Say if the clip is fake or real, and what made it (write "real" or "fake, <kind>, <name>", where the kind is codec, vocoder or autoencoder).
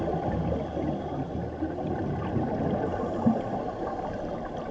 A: real